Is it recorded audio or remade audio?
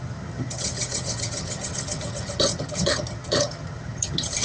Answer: remade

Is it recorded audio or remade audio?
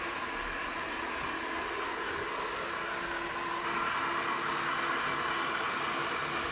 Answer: recorded